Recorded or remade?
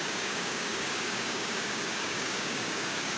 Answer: remade